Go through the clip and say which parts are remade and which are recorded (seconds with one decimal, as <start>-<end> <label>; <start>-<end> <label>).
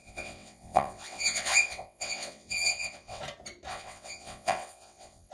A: 0.0-3.2 remade; 3.2-3.7 recorded; 3.7-5.3 remade